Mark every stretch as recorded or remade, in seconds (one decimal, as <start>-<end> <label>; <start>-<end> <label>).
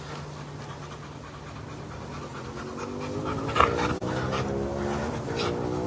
0.0-5.9 recorded